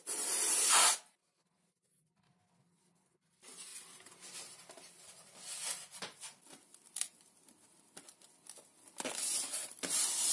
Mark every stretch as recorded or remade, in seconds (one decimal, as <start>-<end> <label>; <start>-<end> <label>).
0.0-10.3 recorded